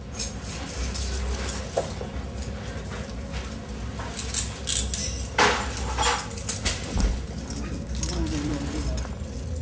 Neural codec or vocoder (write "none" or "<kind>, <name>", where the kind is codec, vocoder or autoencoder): none